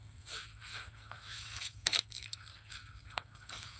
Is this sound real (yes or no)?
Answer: no